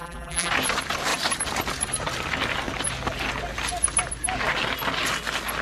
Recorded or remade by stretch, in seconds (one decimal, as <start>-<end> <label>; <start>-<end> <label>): 0.0-0.5 remade; 0.5-5.6 recorded